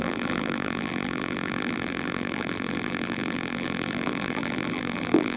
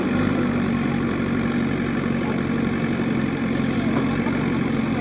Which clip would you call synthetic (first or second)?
first